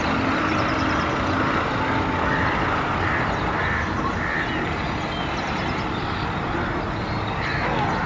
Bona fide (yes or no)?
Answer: yes